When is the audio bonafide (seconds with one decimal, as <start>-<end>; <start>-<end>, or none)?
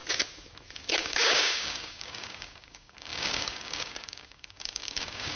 0.0-0.9